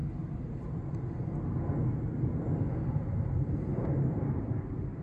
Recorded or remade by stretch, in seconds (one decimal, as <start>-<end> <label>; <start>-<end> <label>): 0.0-1.3 remade; 1.3-1.9 recorded; 1.9-5.0 remade